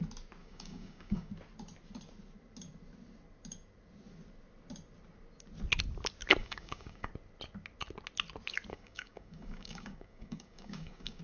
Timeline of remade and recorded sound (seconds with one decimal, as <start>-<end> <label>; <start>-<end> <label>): 0.0-0.4 recorded; 0.4-1.3 remade; 1.3-6.4 recorded; 6.4-7.1 remade; 7.1-8.7 recorded; 8.7-11.2 remade